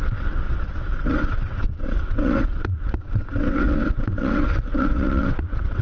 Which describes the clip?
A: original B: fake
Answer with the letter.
B